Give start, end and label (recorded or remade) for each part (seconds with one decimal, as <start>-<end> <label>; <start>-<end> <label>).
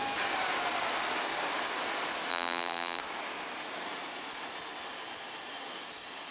0.0-2.3 recorded; 2.3-3.0 remade; 3.0-6.3 recorded